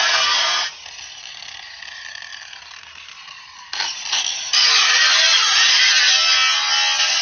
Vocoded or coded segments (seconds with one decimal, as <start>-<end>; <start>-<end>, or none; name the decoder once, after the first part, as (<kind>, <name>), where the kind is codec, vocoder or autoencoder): none